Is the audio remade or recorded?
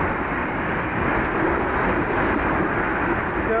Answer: recorded